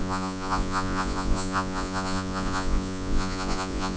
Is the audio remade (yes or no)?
yes